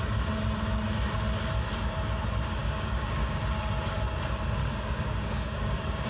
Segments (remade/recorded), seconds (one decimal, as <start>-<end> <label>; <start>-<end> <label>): 0.0-2.6 recorded; 2.6-3.4 remade; 3.4-4.6 recorded; 4.6-6.1 remade